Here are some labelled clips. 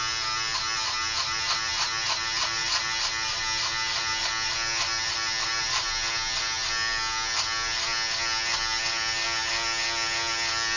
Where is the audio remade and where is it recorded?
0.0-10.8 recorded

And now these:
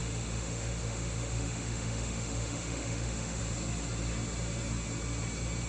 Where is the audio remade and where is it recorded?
0.0-3.4 remade; 3.4-5.7 recorded

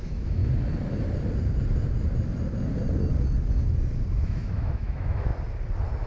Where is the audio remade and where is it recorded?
0.0-0.4 remade; 0.4-4.1 recorded; 4.1-5.3 remade; 5.3-6.1 recorded

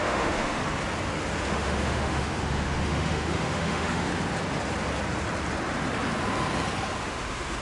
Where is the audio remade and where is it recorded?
0.0-0.6 remade; 0.6-1.4 recorded; 1.4-4.1 remade; 4.1-7.0 recorded; 7.0-7.6 remade

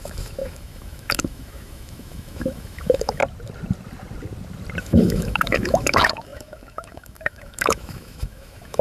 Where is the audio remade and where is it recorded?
0.0-3.2 remade; 3.2-4.8 recorded; 4.8-8.8 remade

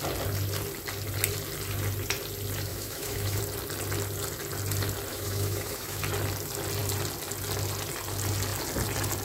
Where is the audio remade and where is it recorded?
0.0-2.7 recorded; 2.7-3.4 remade; 3.4-5.1 recorded; 5.1-6.0 remade; 6.0-9.2 recorded